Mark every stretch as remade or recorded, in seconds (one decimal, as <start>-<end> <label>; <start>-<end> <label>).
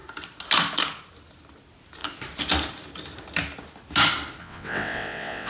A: 0.0-4.4 recorded; 4.4-5.5 remade